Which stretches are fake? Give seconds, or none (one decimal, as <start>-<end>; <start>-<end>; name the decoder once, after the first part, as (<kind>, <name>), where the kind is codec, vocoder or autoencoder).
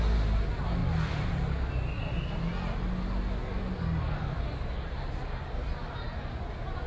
none